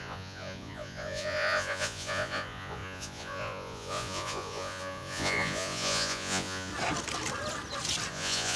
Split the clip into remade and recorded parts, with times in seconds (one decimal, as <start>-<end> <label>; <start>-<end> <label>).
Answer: 0.0-6.7 remade; 6.7-8.1 recorded; 8.1-8.6 remade